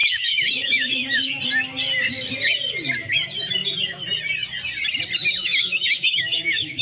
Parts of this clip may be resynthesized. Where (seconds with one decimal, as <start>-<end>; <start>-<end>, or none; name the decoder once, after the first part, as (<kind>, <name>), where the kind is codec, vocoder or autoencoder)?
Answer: 0.0-1.4 (autoencoder, DAC-VAE); 5.4-6.8